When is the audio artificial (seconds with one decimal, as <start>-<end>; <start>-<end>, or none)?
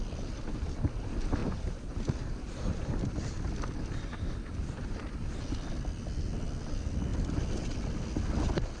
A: none